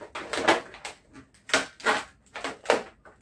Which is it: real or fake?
real